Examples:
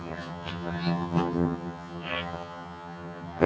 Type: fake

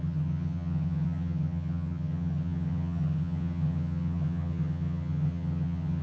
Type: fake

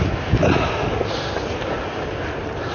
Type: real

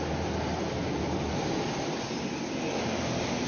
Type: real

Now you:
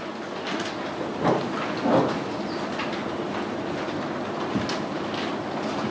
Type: real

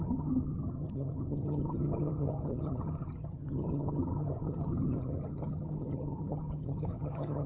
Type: fake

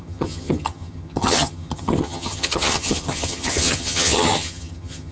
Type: fake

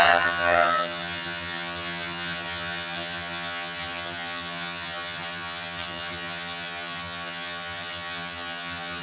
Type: fake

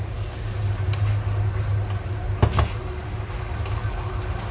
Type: real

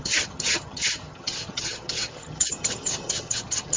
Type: fake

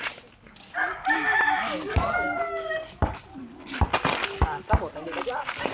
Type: real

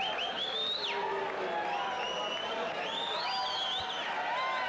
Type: real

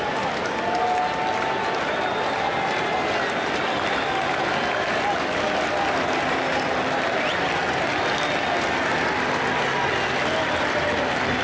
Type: real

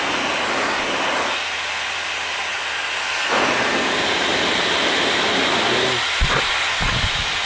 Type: real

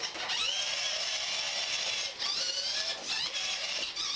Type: real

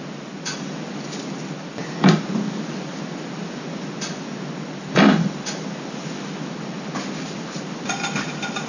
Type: real